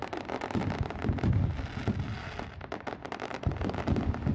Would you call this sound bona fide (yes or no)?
yes